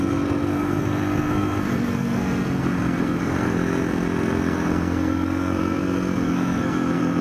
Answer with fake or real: fake